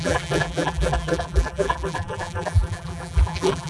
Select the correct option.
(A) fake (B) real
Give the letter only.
A